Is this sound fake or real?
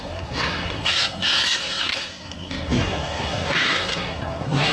fake